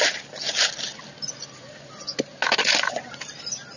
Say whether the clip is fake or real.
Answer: real